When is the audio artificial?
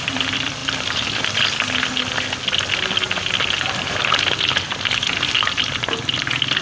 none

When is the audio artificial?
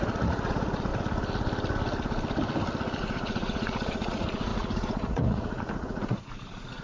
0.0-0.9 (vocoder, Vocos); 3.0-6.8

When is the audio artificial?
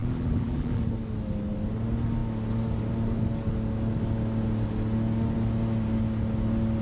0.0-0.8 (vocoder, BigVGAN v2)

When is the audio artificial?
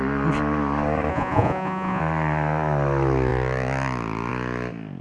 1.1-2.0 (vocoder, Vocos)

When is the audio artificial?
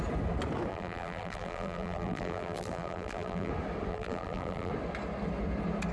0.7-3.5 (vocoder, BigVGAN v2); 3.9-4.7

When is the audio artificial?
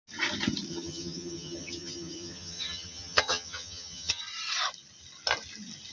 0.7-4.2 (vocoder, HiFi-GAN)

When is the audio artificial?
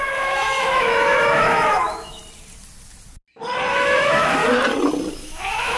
0.0-2.2 (autoencoder, DAC-VAE); 3.7-4.4; 5.1-5.8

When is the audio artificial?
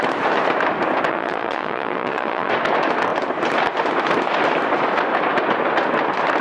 1.1-2.5 (vocoder, Vocos)